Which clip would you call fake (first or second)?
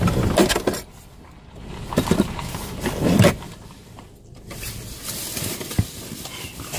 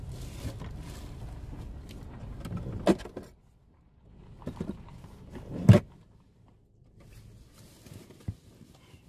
first